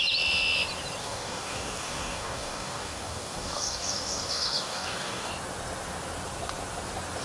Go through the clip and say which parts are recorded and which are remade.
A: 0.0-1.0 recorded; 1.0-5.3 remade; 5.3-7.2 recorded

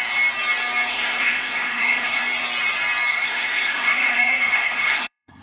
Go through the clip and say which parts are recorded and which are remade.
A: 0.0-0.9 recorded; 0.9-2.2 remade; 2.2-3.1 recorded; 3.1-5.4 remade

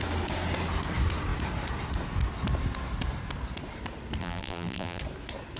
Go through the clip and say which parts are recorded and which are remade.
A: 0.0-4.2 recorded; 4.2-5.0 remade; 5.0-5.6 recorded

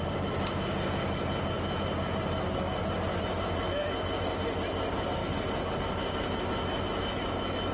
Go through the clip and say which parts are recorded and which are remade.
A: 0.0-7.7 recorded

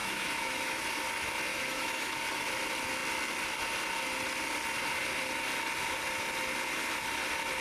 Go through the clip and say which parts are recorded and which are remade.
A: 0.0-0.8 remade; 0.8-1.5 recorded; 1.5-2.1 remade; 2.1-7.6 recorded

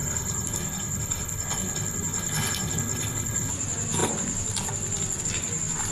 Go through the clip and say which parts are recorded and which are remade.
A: 0.0-3.5 remade; 3.5-5.9 recorded

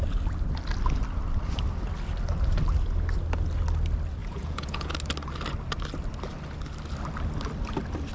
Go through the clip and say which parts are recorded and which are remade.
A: 0.0-4.2 recorded; 4.2-4.9 remade; 4.9-8.1 recorded

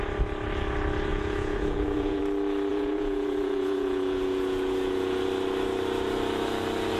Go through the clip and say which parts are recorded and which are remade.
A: 0.0-1.1 recorded; 1.1-2.2 remade; 2.2-2.7 recorded; 2.7-5.2 remade; 5.2-7.0 recorded